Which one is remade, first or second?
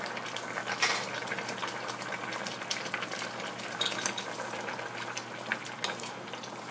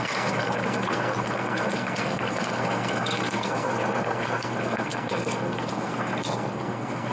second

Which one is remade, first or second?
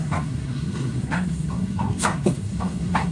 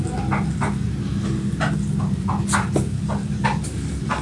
first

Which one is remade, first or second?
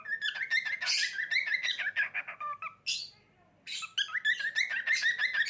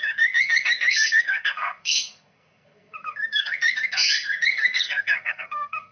second